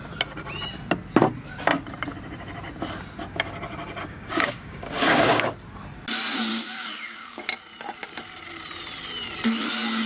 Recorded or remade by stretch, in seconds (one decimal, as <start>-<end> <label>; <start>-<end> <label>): 0.0-3.8 recorded; 3.8-5.5 remade; 5.5-6.5 recorded; 6.5-7.4 remade; 7.4-10.1 recorded